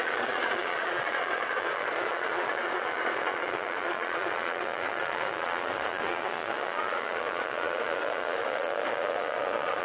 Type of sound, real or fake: fake